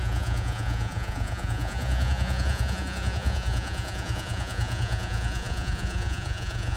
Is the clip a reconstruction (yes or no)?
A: yes